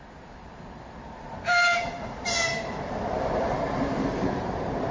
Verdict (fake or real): real